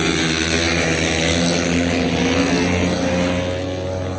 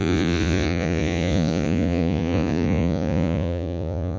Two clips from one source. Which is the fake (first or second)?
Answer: second